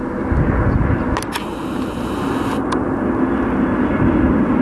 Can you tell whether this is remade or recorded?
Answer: recorded